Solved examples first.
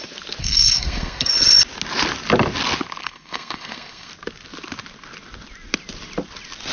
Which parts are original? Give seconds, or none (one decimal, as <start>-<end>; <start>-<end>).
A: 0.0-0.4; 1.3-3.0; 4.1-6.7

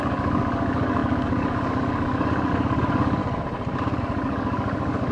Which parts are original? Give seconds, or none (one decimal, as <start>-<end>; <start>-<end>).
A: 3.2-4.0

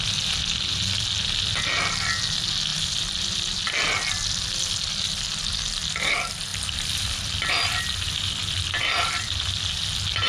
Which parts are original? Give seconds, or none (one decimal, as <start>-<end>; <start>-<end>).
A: 0.0-2.7; 3.7-6.5; 7.5-8.4; 9.4-10.3